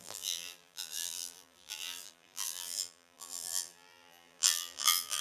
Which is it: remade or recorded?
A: remade